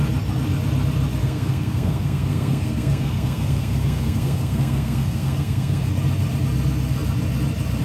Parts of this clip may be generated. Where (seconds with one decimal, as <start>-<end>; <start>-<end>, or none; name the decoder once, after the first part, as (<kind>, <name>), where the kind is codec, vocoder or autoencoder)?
1.2-5.9 (codec, SNAC)